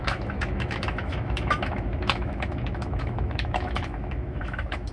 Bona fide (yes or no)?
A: no